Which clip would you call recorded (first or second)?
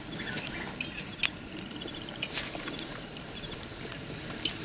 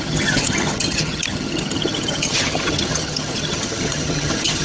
first